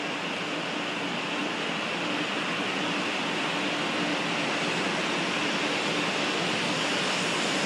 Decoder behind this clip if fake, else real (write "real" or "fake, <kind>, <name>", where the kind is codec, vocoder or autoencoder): real